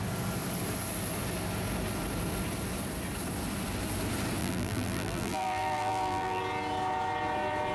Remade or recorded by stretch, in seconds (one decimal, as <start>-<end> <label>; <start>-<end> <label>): 0.0-4.4 recorded; 4.4-6.4 remade; 6.4-7.7 recorded